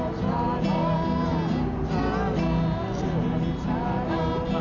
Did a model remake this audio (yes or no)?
no